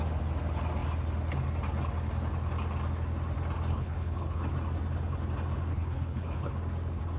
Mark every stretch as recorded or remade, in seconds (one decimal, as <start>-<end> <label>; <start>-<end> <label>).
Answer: 0.0-3.7 recorded; 3.7-4.4 remade; 4.4-5.7 recorded; 5.7-6.5 remade; 6.5-7.2 recorded